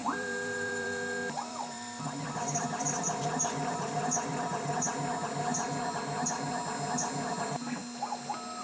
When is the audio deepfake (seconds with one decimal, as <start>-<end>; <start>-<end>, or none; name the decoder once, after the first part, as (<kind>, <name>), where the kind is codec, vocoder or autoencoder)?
0.0-4.8 (vocoder, BigVGAN v2)